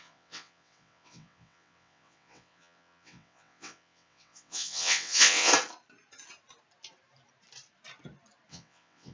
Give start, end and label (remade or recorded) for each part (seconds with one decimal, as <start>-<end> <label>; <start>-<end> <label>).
0.0-5.5 remade; 5.5-8.5 recorded; 8.5-9.1 remade

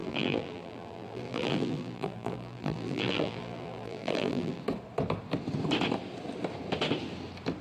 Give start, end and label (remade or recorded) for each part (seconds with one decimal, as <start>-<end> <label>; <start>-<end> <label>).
0.0-4.6 remade; 4.6-7.6 recorded

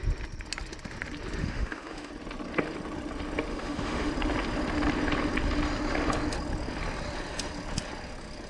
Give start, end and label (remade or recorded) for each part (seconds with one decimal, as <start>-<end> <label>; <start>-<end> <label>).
0.0-1.4 recorded; 1.4-2.1 remade; 2.1-3.5 recorded; 3.5-4.1 remade; 4.1-8.5 recorded

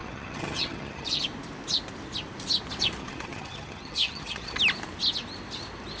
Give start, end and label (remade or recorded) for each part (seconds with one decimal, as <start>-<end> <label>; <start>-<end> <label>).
0.0-1.2 remade; 1.2-3.0 recorded; 3.0-4.6 remade; 4.6-6.0 recorded

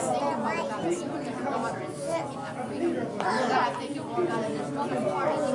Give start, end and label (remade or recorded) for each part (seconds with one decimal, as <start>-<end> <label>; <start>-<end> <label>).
0.0-5.5 recorded